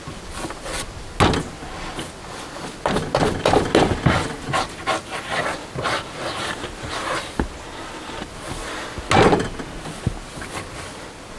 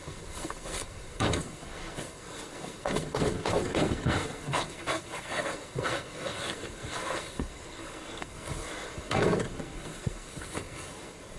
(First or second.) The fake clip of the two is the second